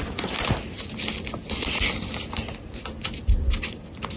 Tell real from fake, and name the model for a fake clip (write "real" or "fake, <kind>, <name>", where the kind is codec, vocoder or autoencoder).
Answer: real